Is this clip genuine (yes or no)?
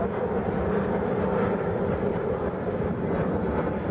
yes